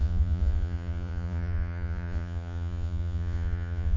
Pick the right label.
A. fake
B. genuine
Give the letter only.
A